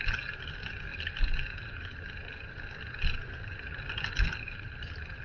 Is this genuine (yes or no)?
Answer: yes